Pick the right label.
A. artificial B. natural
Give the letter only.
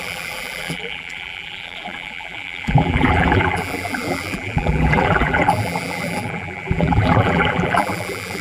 A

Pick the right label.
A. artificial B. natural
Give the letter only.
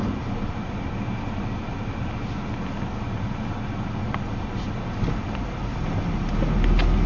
B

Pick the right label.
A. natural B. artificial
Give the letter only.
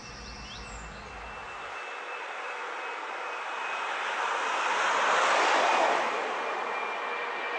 A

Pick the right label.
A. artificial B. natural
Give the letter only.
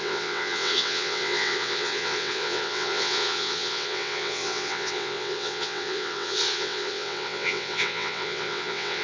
A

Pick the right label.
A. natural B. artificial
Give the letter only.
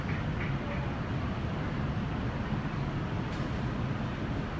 A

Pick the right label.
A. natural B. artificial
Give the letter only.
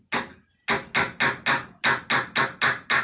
A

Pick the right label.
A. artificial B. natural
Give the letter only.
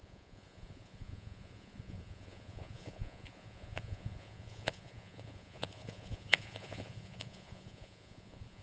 A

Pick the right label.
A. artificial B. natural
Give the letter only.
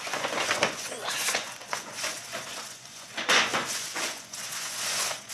A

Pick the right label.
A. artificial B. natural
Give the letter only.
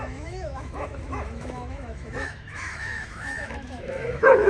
A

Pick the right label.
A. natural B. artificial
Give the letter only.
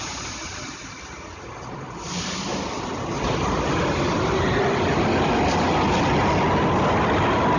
A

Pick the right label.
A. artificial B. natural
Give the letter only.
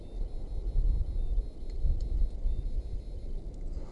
B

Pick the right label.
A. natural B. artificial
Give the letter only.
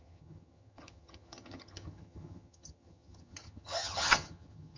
B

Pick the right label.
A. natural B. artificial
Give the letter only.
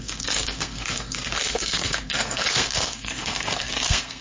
B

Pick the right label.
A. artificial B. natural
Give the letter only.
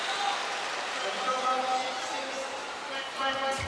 B